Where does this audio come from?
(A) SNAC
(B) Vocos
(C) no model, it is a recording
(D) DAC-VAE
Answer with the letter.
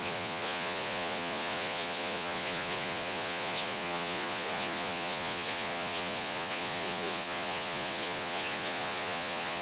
B